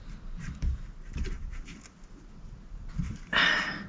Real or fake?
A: real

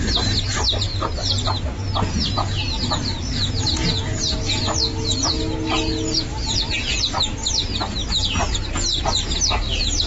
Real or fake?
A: real